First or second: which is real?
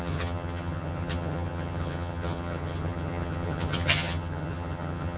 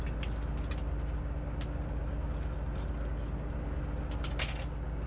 second